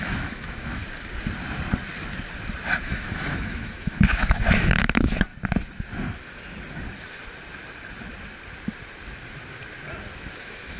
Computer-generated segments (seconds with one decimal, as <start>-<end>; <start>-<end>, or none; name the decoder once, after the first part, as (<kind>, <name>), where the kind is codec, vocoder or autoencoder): 0.0-0.8 (autoencoder, DAC-VAE); 2.8-5.3; 10.4-10.8